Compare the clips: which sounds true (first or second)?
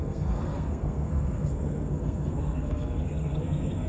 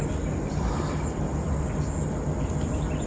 second